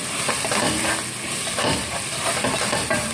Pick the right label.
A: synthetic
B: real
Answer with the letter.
B